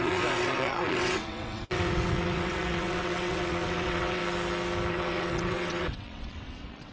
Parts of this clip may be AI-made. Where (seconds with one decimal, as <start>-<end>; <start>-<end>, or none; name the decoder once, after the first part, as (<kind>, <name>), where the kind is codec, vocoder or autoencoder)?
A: 0.0-4.2 (vocoder, WaveNeXt); 4.9-6.9

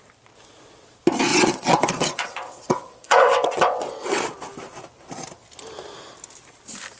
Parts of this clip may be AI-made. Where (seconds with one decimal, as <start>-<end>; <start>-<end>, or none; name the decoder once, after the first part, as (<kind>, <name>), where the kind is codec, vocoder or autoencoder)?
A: 1.3-4.2 (vocoder, WaveNeXt)

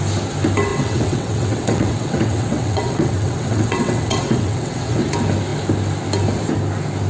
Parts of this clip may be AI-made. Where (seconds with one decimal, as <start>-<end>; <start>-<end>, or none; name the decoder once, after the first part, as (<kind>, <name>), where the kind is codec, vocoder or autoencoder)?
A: 0.7-5.0 (vocoder, WaveNeXt)

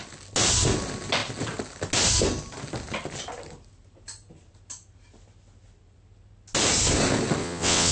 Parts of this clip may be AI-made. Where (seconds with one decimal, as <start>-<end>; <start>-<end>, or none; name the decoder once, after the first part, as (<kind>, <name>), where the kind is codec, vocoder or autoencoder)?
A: 7.4-7.9 (vocoder, WaveNeXt)

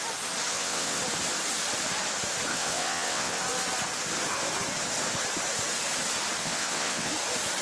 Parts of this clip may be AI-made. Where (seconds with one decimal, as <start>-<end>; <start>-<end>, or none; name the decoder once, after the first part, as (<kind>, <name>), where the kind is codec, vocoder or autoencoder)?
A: 0.5-1.0 (vocoder, WaveNeXt); 2.5-3.4; 6.4-7.1

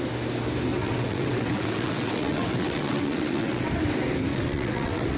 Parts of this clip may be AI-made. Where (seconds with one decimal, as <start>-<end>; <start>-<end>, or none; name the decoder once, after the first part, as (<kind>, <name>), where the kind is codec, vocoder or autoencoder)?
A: 0.7-3.7 (vocoder, WaveNeXt); 4.3-5.2